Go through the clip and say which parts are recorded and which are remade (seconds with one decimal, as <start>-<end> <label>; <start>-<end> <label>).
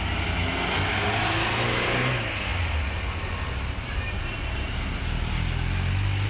0.0-6.3 recorded